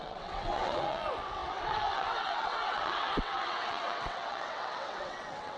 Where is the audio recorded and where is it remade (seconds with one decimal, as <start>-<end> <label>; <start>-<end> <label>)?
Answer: 0.0-5.6 remade